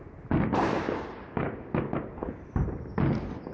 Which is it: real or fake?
real